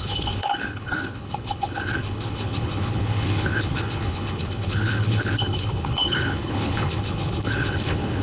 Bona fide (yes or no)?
no